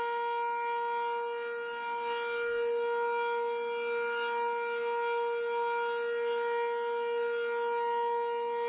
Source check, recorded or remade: recorded